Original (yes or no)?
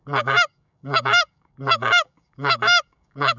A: no